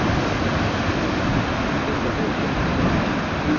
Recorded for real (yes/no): no